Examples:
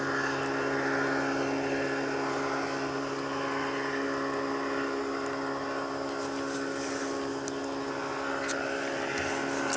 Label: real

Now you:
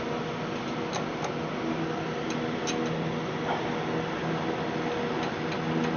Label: real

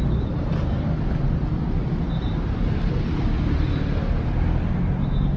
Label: real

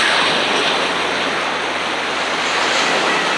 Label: real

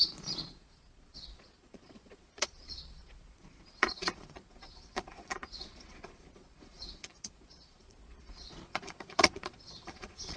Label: fake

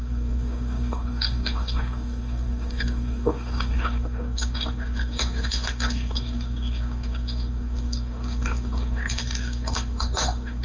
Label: fake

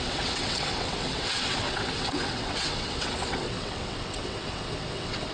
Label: fake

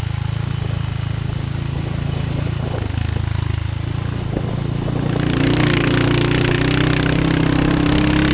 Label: real